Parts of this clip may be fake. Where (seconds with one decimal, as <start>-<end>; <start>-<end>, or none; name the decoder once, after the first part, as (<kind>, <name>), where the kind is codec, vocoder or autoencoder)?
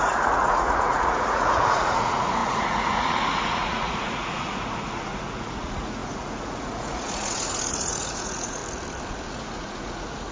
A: 0.0-8.6 (vocoder, Vocos); 9.3-10.3